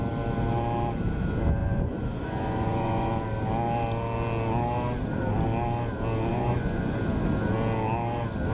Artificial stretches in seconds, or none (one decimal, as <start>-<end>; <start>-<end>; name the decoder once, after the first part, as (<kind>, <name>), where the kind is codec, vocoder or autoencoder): 1.6-3.1 (vocoder, Vocos); 6.3-7.0